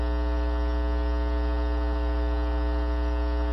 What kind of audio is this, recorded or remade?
recorded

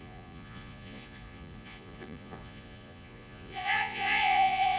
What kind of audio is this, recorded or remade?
remade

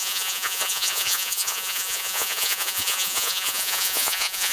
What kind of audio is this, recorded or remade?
remade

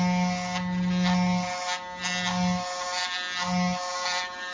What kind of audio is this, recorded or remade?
recorded